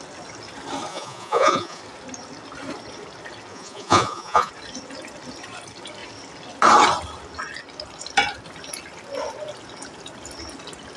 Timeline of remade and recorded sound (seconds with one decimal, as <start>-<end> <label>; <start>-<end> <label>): 0.0-0.9 recorded; 0.9-1.8 remade; 1.8-3.5 recorded; 3.5-4.5 remade; 4.5-11.0 recorded